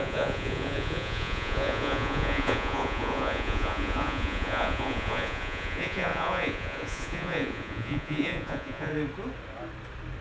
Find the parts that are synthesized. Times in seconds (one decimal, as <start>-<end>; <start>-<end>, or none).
0.0-8.9